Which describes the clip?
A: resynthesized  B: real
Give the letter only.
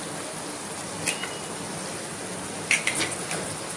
B